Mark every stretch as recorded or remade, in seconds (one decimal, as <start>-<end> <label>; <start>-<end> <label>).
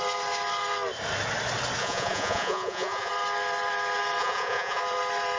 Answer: 0.0-1.8 recorded; 1.8-3.1 remade; 3.1-4.2 recorded; 4.2-4.8 remade; 4.8-5.4 recorded